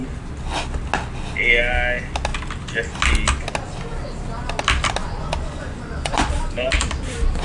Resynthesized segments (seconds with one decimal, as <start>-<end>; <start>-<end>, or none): 5.0-6.3